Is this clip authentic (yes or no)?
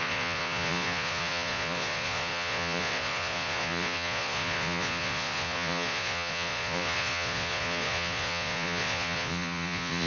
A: no